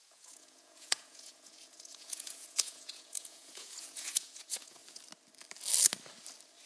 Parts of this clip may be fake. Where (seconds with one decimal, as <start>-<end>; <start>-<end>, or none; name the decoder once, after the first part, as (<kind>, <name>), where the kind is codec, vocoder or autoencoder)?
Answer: 0.0-4.8 (vocoder, Vocos)